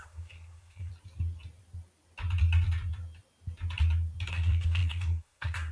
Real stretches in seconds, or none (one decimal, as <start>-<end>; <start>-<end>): 0.9-4.3